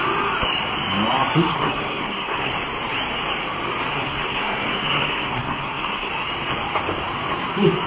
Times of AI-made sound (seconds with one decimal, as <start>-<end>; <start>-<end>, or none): 1.5-2.5; 3.9-6.1